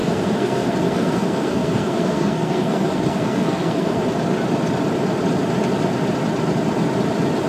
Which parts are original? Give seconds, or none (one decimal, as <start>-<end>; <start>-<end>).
4.0-7.5